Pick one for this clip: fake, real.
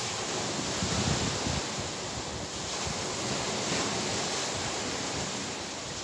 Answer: real